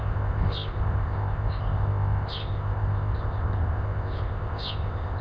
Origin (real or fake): fake